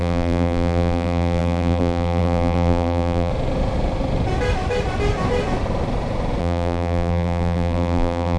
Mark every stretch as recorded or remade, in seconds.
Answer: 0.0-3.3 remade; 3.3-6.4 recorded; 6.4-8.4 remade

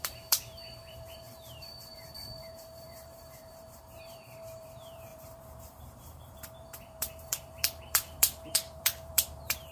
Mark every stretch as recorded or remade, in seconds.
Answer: 0.0-9.7 remade

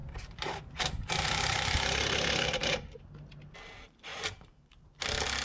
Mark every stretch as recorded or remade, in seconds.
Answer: 0.0-3.0 remade; 3.0-4.1 recorded; 4.1-4.9 remade; 4.9-5.4 recorded

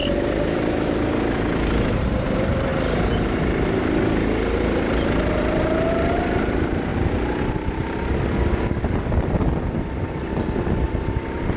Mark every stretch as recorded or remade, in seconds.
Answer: 0.0-1.9 recorded; 1.9-2.7 remade; 2.7-5.9 recorded; 5.9-6.9 remade; 6.9-10.9 recorded; 10.9-11.6 remade

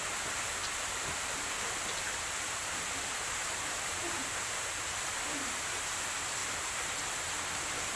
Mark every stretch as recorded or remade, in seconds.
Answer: 0.0-0.6 recorded; 0.6-5.4 remade; 5.4-6.4 recorded; 6.4-7.0 remade; 7.0-8.0 recorded

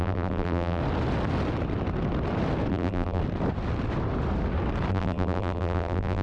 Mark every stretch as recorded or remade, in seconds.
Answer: 0.0-0.8 remade; 0.8-2.7 recorded; 2.7-3.2 remade; 3.2-4.9 recorded; 4.9-6.2 remade

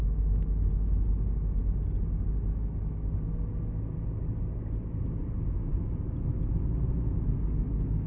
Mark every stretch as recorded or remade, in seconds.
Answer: 0.0-8.1 recorded